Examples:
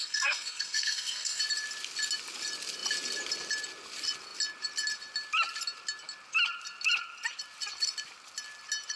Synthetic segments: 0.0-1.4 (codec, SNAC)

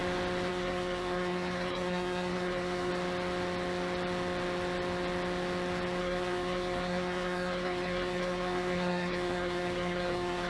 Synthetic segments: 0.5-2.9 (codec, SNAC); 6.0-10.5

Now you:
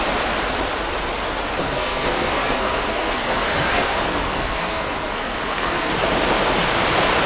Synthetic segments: 1.6-5.9 (codec, SNAC)

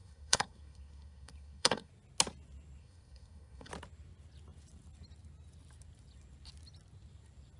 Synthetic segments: 0.0-1.9 (codec, SNAC); 2.8-3.7

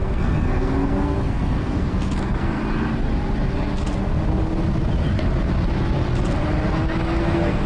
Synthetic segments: 0.0-2.6 (codec, SNAC); 7.2-7.7